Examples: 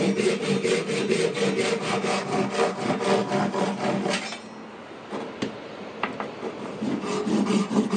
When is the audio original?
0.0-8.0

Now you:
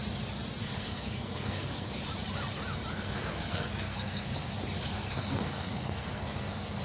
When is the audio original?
0.0-0.6; 2.0-2.9; 4.5-4.9

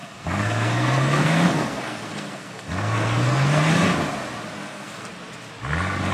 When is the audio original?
3.7-4.6; 5.1-6.1

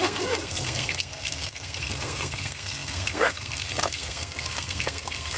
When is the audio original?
none

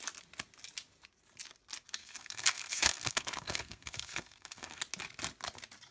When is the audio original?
0.0-2.0; 4.8-5.9

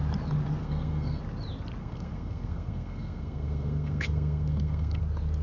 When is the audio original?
0.0-0.6; 1.2-1.8; 5.0-5.4

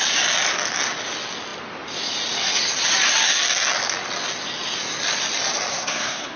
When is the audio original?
0.0-5.7

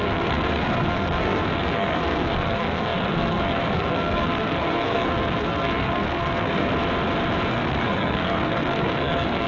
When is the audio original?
6.7-7.5